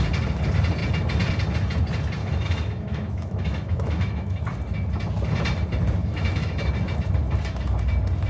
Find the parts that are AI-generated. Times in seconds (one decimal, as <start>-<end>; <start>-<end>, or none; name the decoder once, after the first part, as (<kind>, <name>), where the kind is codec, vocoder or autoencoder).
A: 2.2-4.4 (autoencoder, DAC-VAE); 6.0-6.7

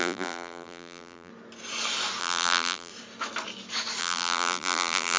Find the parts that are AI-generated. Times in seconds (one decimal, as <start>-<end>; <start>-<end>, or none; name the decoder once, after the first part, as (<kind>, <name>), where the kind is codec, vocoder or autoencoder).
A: 0.0-1.3 (vocoder, BigVGAN v2); 2.2-2.9; 4.0-5.2